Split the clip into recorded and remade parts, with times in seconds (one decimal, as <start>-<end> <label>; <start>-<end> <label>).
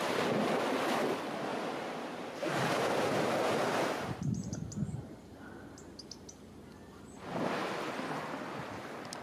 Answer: 0.0-1.5 recorded; 1.5-5.2 remade; 5.2-9.2 recorded